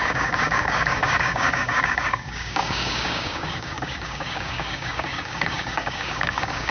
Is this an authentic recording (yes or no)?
no